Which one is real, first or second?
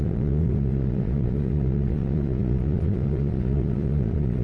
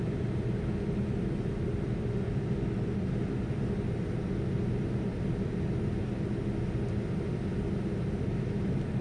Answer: second